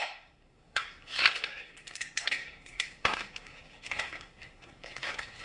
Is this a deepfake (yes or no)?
yes